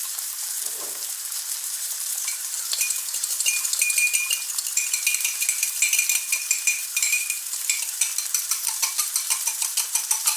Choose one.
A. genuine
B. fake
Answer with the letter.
B